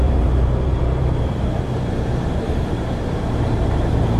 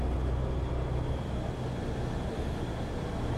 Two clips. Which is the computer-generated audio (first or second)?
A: first